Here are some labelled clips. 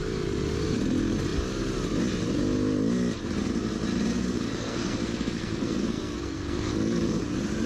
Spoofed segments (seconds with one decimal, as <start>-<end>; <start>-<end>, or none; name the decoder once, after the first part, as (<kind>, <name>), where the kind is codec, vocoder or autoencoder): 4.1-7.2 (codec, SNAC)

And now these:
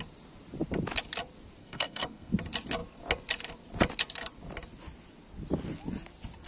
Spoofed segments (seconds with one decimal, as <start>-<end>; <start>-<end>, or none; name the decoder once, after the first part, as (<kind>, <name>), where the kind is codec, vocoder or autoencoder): 1.6-2.3 (codec, SNAC)

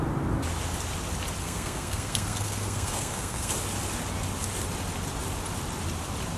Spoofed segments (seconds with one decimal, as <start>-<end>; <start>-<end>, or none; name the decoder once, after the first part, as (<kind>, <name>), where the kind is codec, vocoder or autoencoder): 1.4-3.5 (codec, SNAC)

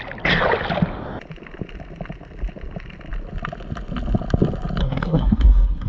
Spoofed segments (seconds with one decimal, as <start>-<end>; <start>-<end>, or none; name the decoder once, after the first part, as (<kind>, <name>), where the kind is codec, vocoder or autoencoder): 4.8-5.9 (codec, SNAC)

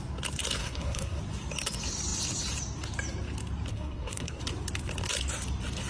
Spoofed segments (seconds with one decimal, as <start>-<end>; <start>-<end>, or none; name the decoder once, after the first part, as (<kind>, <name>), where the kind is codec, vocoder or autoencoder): 0.6-1.2 (codec, SNAC); 3.7-4.4

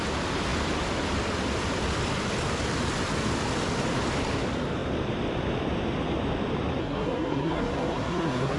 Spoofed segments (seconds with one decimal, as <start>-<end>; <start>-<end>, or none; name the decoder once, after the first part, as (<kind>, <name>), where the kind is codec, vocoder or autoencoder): 6.8-8.6 (codec, SNAC)

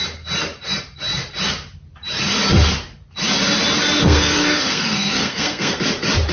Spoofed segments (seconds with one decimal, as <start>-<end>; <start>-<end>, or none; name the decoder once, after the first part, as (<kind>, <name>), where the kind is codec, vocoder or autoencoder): 4.0-5.8 (codec, SNAC)